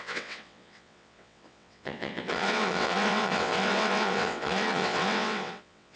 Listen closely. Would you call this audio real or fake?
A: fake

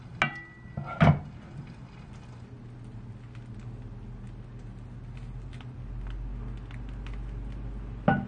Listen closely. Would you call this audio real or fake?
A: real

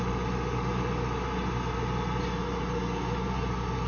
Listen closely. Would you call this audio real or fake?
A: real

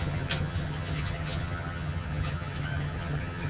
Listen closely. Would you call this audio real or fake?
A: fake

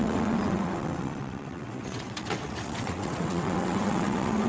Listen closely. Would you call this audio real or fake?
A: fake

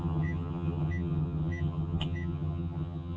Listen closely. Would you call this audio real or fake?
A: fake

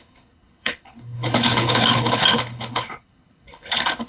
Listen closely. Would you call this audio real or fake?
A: fake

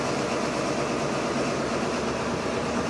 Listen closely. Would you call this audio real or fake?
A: real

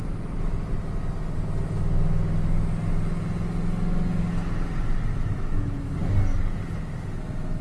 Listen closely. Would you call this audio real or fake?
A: real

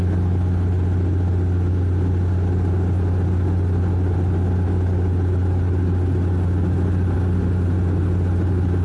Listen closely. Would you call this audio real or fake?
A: real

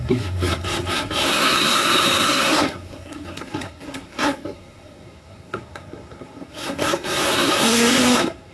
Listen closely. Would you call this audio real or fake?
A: fake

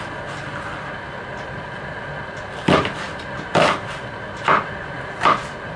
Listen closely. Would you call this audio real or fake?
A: real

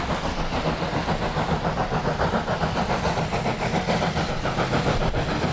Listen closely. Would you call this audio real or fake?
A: real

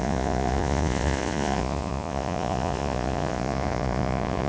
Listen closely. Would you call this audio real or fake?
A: fake